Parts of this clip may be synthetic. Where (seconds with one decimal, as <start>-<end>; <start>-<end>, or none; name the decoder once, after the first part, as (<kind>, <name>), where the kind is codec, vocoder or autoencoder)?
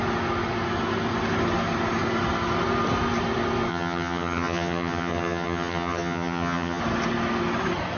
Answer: 3.7-6.8 (vocoder, HiFi-GAN)